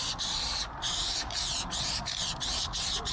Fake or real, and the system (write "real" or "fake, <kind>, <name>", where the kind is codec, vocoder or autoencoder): real